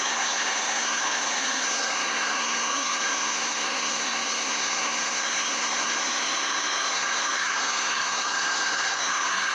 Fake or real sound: fake